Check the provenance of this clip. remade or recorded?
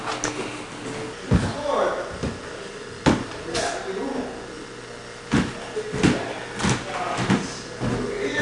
recorded